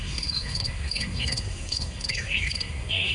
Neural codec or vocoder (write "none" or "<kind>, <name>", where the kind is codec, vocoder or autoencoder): codec, SNAC